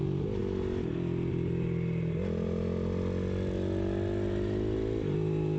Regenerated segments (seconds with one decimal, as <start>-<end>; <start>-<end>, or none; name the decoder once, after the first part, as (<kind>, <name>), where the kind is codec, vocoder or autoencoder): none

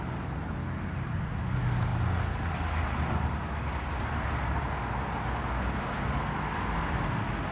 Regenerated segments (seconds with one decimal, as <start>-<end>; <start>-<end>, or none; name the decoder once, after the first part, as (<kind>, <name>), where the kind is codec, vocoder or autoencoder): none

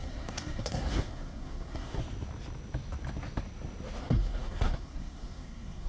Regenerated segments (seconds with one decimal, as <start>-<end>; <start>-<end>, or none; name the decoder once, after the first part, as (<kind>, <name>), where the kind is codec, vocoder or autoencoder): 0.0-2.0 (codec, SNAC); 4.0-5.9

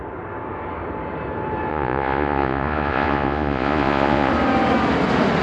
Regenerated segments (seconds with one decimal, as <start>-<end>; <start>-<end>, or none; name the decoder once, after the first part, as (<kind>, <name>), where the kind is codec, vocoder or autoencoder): 1.7-4.3 (vocoder, Vocos)

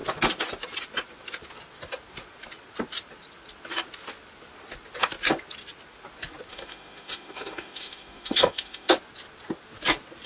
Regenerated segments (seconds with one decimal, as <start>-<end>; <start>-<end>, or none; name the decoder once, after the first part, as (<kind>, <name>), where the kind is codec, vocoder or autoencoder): 6.5-8.9 (autoencoder, DAC-VAE)